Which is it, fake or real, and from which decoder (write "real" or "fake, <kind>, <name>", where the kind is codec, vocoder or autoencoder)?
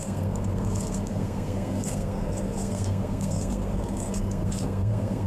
fake, codec, SNAC